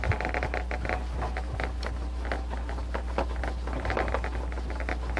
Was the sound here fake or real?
real